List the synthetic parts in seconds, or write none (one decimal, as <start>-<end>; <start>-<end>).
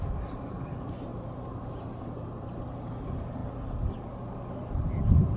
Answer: 0.0-3.4; 4.7-5.4